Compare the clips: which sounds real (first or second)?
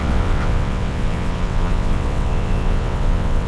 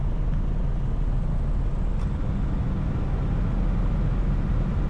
second